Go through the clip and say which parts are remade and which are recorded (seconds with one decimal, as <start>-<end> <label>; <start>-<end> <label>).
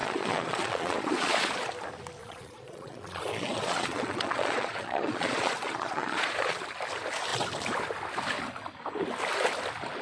0.0-1.7 remade; 1.7-2.2 recorded; 2.2-6.5 remade; 6.5-10.0 recorded